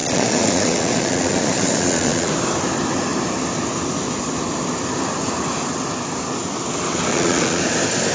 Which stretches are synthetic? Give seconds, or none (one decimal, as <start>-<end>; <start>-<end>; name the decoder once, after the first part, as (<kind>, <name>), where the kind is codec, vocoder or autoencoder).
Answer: 0.0-2.3 (vocoder, Vocos); 7.1-7.6